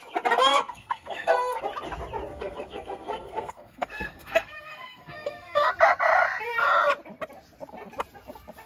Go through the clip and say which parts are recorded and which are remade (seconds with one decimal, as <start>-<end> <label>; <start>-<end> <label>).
0.0-0.5 recorded; 0.5-1.6 remade; 1.6-2.3 recorded; 2.3-5.7 remade; 5.7-8.7 recorded